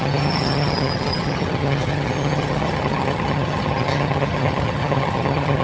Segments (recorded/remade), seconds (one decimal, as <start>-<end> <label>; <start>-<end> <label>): 0.0-5.6 remade